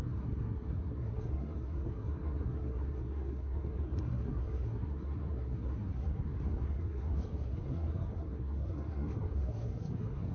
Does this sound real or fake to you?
fake